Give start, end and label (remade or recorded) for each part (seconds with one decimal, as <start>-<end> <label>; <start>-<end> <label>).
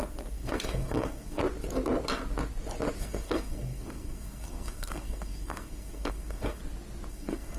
0.0-1.4 remade; 1.4-3.0 recorded; 3.0-6.6 remade; 6.6-7.1 recorded; 7.1-7.6 remade